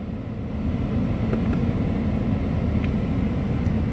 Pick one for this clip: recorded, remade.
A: recorded